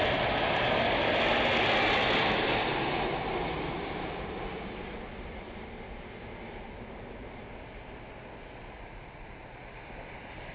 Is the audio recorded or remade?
recorded